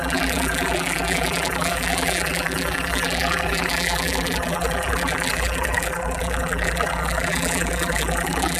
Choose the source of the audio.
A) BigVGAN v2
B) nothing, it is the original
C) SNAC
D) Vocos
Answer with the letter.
A